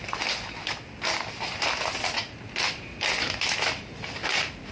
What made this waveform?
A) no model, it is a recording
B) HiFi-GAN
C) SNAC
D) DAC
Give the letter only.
A